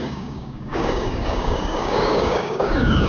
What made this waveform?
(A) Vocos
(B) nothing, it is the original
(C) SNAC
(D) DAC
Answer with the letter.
D